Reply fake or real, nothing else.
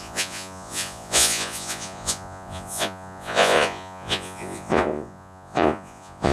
fake